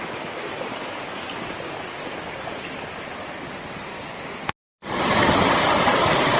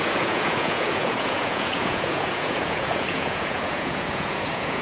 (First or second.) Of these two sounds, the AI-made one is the second